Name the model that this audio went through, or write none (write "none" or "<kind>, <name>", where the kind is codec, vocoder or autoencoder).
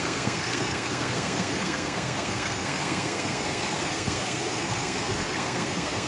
codec, SNAC